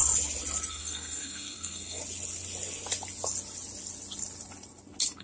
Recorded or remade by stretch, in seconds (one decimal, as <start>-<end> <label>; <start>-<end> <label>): 0.0-0.7 recorded; 0.7-2.0 remade; 2.0-5.2 recorded